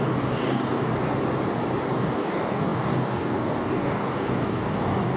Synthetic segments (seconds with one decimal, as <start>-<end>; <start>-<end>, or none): 0.0-0.9; 1.9-5.2